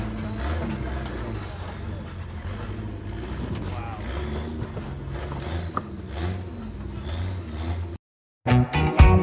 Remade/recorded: recorded